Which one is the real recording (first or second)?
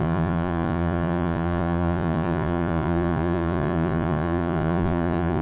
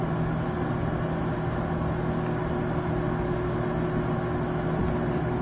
second